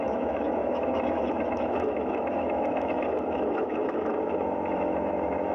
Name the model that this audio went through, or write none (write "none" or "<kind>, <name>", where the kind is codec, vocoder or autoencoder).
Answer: autoencoder, DAC-VAE